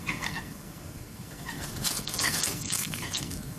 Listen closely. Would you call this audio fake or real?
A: fake